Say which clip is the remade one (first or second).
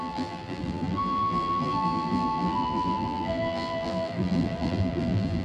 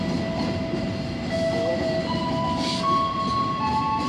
first